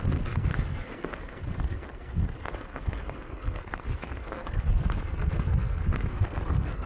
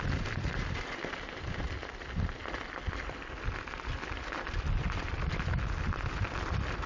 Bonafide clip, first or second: second